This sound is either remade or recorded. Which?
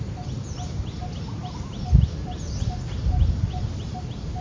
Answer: recorded